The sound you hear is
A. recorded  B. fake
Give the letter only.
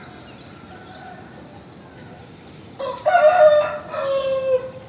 A